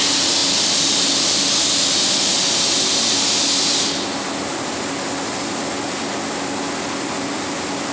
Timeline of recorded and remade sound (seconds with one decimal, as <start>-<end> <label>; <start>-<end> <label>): 0.0-7.9 recorded